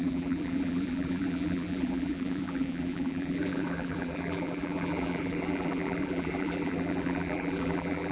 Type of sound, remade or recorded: remade